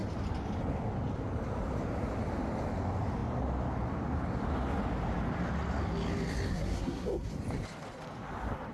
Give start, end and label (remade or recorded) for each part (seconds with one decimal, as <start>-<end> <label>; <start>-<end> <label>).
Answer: 0.0-6.5 recorded; 6.5-7.3 remade; 7.3-8.7 recorded